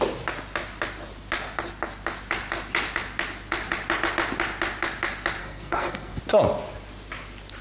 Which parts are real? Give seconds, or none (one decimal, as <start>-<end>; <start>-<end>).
0.0-5.4; 6.2-7.6